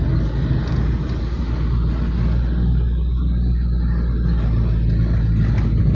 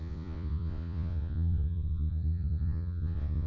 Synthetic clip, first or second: second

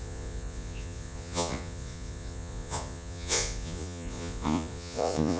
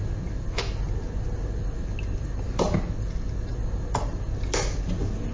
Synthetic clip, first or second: first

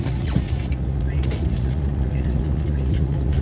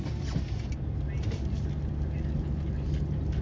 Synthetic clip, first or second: first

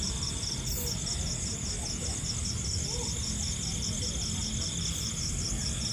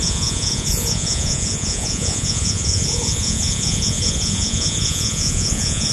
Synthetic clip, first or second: second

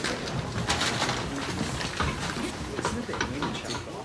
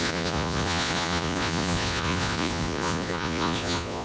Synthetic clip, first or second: second